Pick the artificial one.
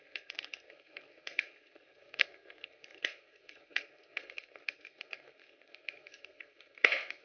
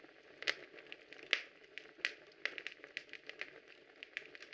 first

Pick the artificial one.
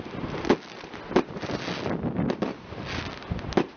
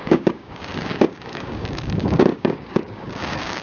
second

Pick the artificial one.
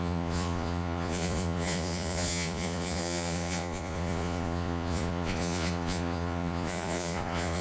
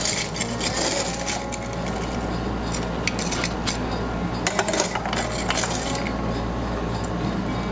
first